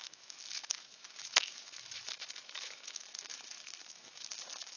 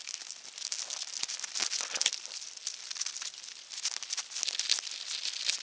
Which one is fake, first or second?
first